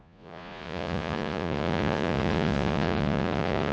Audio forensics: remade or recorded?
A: remade